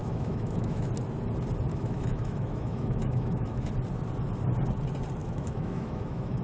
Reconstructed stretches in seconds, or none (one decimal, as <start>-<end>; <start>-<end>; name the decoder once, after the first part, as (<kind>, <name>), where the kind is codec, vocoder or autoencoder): 0.0-0.9 (autoencoder, DAC-VAE); 1.7-3.7; 5.2-6.4